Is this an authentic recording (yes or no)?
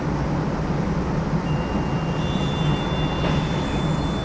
yes